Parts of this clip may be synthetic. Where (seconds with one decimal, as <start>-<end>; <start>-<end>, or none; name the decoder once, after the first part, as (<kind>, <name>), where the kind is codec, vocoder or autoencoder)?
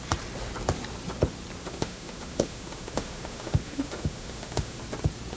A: 1.6-4.8 (autoencoder, DAC-VAE)